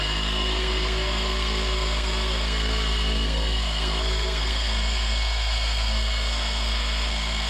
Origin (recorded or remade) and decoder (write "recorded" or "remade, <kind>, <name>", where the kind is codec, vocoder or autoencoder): remade, codec, SNAC